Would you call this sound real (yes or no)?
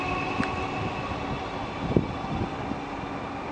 yes